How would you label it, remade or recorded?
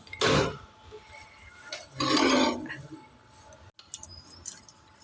recorded